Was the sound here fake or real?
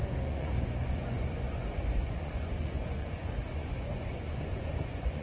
fake